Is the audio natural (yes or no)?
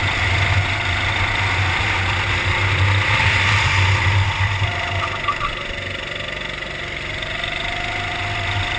yes